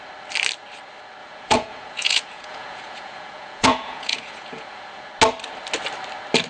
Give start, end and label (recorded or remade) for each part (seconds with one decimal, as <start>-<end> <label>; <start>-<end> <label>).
0.0-1.2 recorded; 1.2-5.1 remade; 5.1-6.5 recorded